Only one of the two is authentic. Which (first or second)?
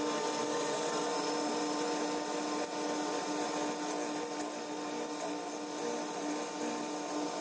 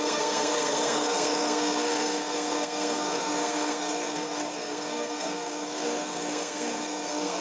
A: first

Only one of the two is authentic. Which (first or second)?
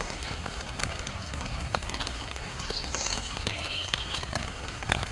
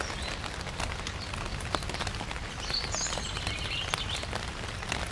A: second